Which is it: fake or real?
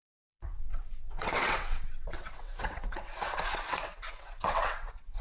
fake